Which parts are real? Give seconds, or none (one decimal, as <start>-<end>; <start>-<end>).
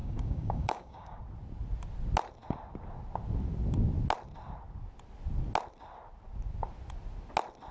1.2-7.7